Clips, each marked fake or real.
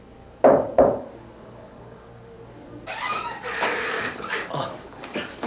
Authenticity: fake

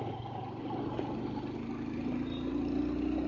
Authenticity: real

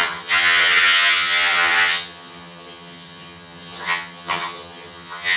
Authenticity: fake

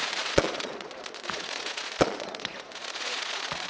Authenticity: fake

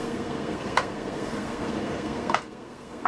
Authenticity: fake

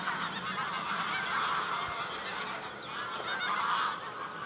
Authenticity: real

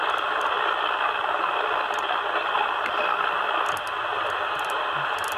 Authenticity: fake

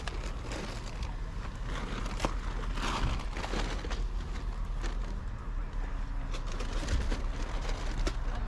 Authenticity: real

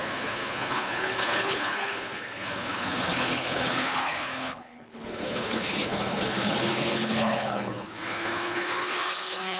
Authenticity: fake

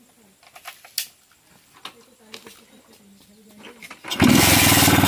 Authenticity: real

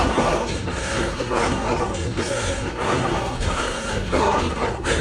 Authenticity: fake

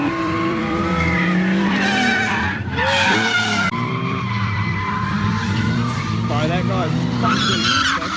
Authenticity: fake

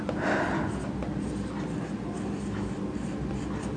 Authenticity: real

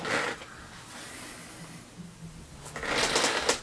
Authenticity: real